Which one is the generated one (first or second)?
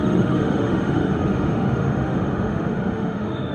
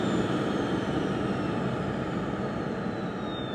first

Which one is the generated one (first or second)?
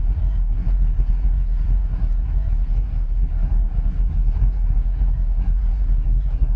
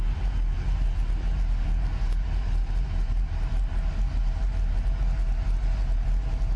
first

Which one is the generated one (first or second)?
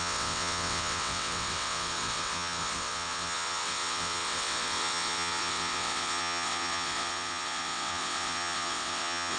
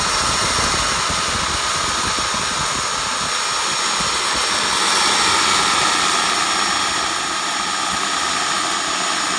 first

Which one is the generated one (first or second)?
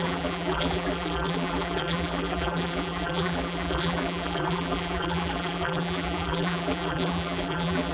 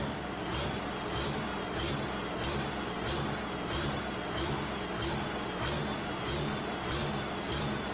first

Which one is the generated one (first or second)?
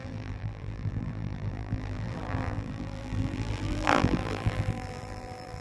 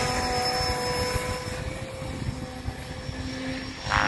first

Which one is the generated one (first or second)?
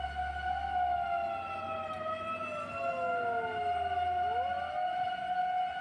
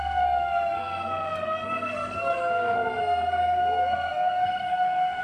second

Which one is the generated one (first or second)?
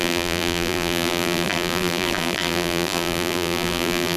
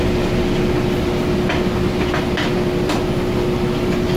first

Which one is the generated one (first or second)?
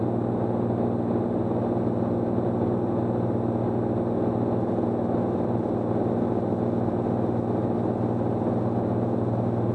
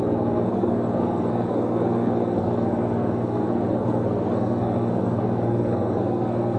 second